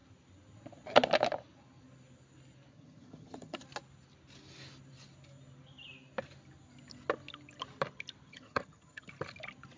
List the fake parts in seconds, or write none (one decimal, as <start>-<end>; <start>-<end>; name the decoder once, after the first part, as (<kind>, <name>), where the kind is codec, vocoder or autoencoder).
2.7-3.6 (vocoder, HiFi-GAN); 8.3-9.1

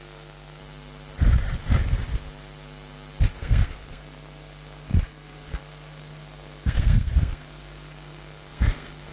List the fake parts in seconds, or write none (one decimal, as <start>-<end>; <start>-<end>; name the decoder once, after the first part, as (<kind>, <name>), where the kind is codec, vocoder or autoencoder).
0.0-0.6 (codec, SNAC); 3.4-9.1

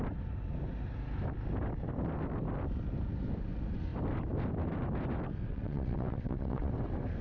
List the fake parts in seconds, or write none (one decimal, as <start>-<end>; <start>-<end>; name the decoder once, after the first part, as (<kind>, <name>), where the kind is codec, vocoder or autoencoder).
5.5-6.7 (vocoder, WaveNeXt)

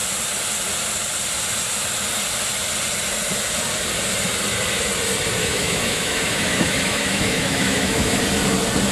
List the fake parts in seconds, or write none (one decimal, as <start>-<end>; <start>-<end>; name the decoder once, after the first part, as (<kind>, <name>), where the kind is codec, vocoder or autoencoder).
5.4-8.2 (autoencoder, DAC-VAE)

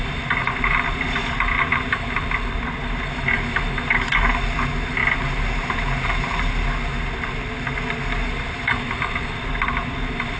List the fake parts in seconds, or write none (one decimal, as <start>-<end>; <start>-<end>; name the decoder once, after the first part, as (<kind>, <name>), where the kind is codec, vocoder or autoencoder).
none

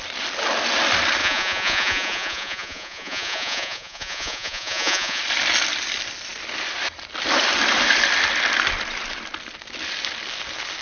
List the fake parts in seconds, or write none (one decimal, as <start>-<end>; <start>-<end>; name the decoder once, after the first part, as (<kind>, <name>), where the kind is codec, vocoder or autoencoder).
1.2-5.2 (vocoder, Vocos)